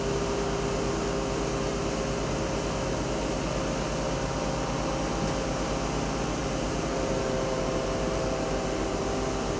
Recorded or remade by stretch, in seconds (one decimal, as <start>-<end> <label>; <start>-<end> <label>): 0.0-6.4 recorded; 6.4-9.0 remade; 9.0-9.6 recorded